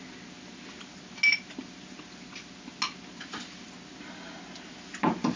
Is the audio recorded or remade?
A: recorded